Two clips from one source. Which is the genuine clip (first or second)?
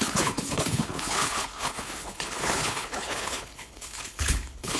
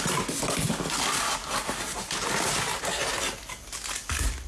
second